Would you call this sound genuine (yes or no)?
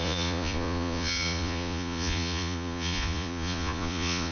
no